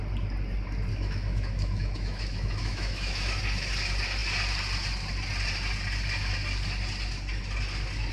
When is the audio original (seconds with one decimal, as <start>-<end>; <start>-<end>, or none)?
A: 0.0-0.9; 3.4-8.1